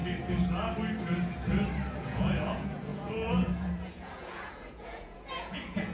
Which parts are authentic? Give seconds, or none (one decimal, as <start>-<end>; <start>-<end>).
0.0-2.0